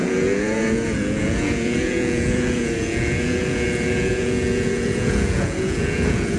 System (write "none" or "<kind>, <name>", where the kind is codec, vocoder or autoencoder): vocoder, Vocos